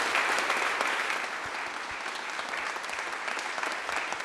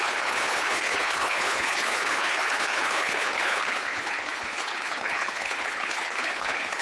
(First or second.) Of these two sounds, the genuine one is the first